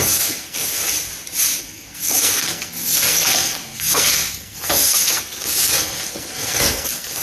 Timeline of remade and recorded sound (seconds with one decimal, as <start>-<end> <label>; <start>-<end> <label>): 0.0-0.8 remade; 0.8-1.6 recorded; 1.6-7.2 remade